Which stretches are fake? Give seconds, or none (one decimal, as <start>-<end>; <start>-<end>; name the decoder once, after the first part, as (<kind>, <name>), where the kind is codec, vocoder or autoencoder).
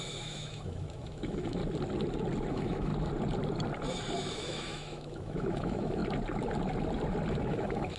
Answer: 0.0-1.6 (autoencoder, DAC-VAE); 2.5-2.9; 4.3-6.0; 7.3-8.0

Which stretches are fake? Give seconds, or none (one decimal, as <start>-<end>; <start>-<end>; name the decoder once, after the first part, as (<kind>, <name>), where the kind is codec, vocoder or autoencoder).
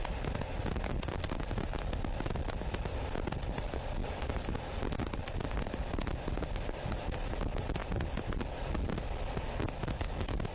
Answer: none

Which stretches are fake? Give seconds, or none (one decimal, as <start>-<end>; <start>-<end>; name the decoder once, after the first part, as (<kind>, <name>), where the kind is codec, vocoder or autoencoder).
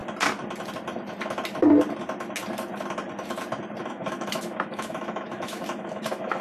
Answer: 3.8-6.4 (autoencoder, DAC-VAE)